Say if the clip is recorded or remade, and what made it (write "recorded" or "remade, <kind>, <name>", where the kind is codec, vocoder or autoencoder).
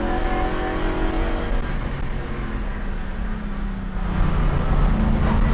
recorded